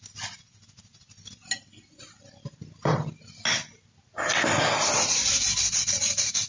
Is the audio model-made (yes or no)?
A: no